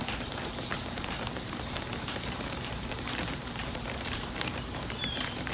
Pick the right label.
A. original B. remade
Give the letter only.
B